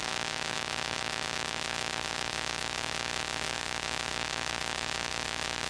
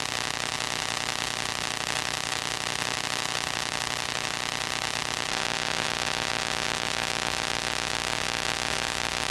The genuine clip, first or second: second